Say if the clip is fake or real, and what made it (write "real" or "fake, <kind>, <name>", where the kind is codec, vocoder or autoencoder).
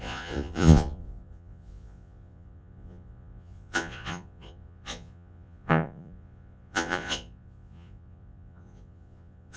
fake, vocoder, Vocos